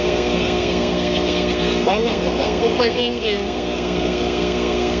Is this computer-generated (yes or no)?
yes